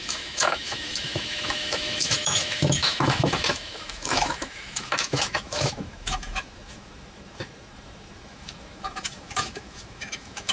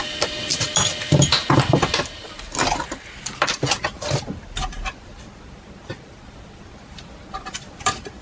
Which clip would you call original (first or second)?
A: second